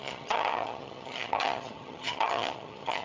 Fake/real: fake